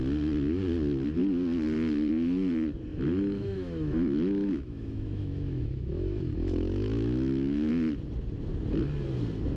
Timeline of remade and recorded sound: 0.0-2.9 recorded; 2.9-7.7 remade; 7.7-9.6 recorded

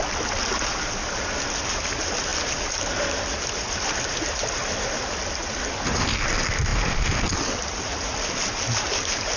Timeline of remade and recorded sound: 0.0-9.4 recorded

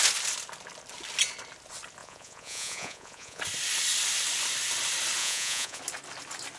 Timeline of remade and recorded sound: 0.0-2.0 recorded; 2.0-3.4 remade; 3.4-5.2 recorded; 5.2-5.8 remade; 5.8-6.6 recorded